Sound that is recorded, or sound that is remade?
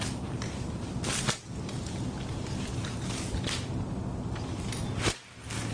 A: recorded